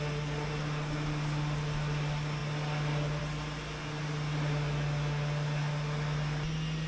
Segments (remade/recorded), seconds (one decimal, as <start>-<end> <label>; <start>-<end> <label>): 0.0-6.9 recorded